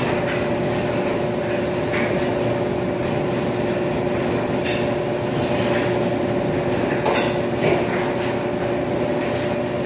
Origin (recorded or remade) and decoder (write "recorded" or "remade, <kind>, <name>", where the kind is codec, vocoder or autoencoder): recorded